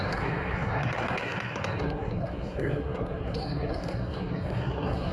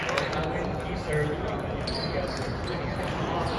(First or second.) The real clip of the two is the second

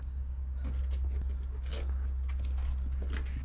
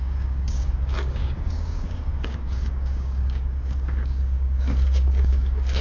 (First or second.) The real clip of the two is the first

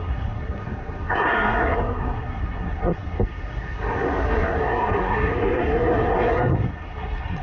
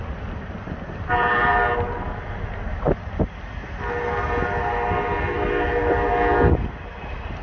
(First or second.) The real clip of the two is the second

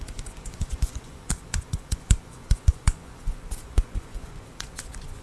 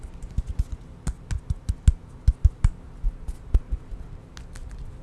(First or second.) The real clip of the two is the second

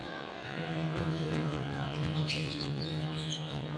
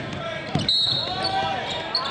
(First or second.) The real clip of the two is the second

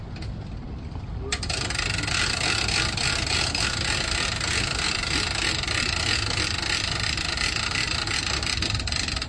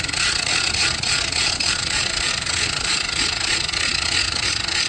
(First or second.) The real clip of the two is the first